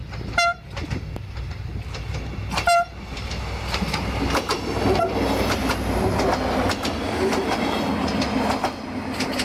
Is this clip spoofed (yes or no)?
no